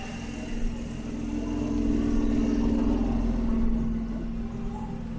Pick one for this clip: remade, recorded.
recorded